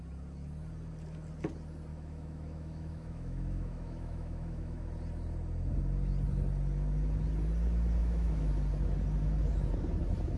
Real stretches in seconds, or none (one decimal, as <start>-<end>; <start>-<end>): 0.0-1.9; 4.8-8.0; 8.5-10.4